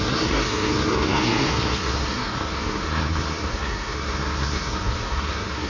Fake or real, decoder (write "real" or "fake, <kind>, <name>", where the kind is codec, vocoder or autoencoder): fake, codec, SNAC